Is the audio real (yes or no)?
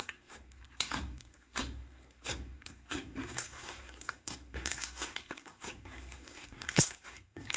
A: no